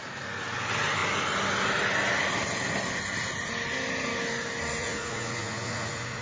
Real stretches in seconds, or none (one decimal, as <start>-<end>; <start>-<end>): 0.0-4.8